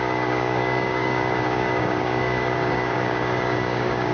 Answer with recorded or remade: remade